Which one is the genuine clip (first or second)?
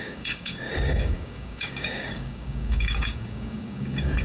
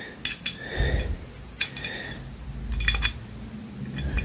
second